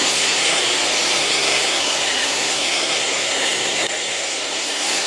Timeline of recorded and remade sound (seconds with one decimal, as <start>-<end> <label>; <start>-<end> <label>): 0.0-0.6 remade; 0.6-1.2 recorded; 1.2-5.1 remade